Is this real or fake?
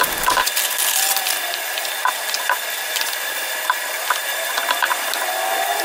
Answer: real